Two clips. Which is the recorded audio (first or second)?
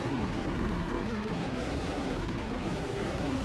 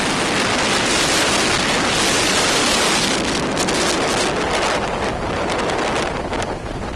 second